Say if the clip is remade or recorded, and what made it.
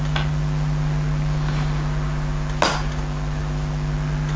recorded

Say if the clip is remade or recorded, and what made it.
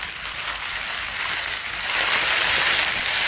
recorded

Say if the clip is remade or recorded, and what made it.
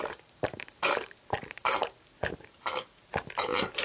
remade, vocoder, BigVGAN v2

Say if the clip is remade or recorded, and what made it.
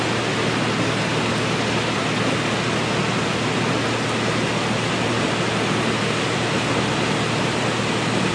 recorded